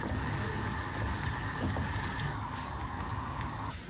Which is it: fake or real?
fake